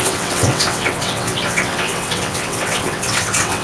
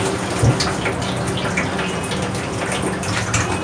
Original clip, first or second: second